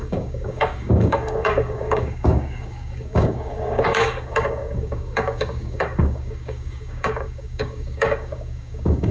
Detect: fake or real fake